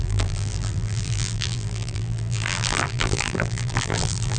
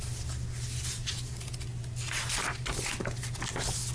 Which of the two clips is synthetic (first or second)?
first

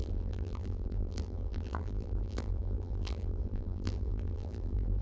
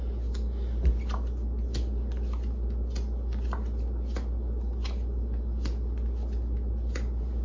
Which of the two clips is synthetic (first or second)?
first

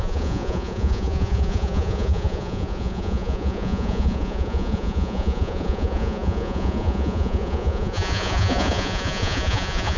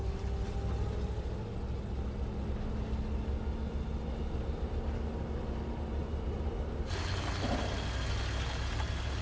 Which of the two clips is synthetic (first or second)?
first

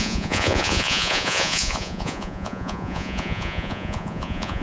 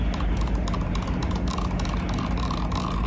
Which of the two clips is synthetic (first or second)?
first